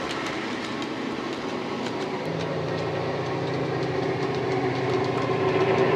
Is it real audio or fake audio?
fake